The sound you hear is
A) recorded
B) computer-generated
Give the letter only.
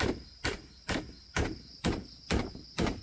B